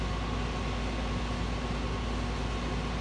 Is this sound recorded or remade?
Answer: recorded